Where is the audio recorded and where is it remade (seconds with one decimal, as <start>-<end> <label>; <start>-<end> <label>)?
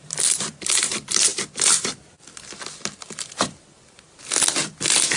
0.0-5.2 remade